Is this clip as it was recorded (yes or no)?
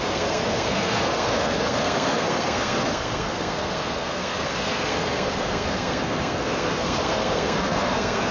no